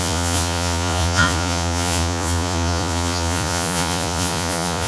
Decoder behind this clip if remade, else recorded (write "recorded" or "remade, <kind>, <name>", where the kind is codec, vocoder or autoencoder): remade, vocoder, Vocos